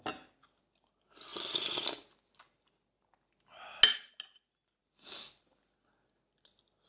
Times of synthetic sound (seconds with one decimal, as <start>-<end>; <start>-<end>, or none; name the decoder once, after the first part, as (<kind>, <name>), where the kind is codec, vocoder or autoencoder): none